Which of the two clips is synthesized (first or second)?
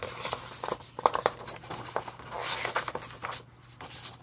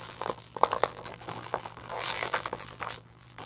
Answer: second